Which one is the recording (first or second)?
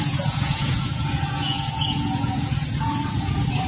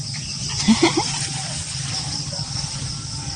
second